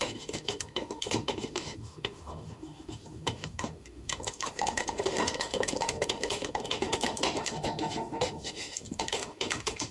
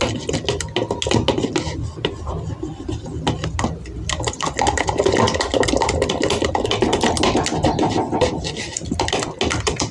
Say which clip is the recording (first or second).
second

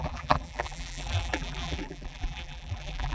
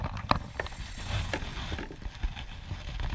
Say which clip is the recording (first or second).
second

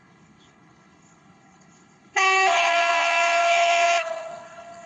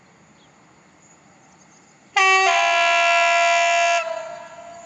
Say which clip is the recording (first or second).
second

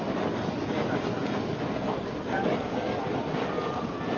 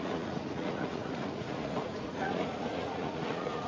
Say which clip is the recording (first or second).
first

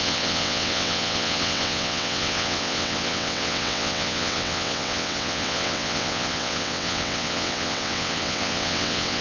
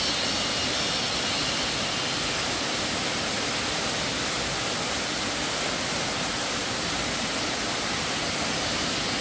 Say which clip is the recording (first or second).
second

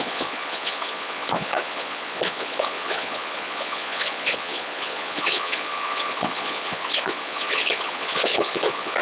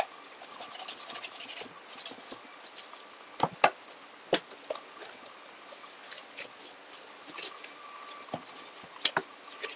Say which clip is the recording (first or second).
second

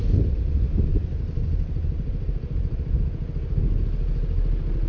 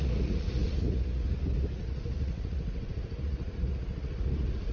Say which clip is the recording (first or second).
first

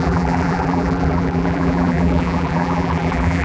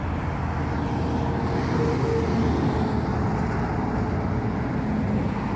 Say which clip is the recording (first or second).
second